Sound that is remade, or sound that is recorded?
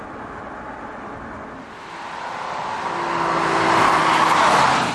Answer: recorded